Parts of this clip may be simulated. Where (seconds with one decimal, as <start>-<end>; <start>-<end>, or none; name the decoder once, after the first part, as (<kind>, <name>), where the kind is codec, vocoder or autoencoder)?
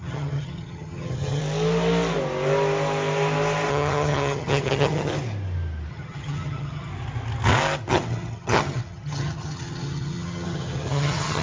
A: 0.0-1.4 (vocoder, HiFi-GAN); 3.7-5.1; 5.9-6.9; 7.9-11.4